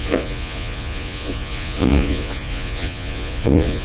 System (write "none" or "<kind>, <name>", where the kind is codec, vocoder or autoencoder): vocoder, Vocos